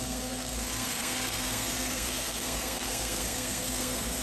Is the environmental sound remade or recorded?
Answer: remade